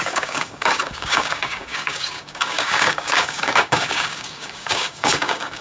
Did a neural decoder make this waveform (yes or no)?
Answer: yes